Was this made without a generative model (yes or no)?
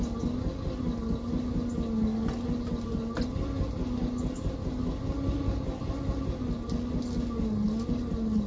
yes